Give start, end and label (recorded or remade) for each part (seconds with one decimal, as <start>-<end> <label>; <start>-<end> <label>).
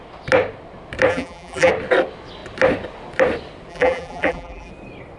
0.0-1.1 recorded; 1.1-1.7 remade; 1.7-3.7 recorded; 3.7-4.7 remade; 4.7-5.2 recorded